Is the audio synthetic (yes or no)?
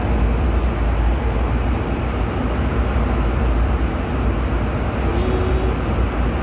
no